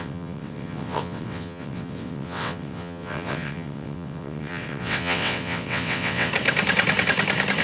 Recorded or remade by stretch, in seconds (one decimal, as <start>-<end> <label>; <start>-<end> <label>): 0.0-6.3 remade; 6.3-7.6 recorded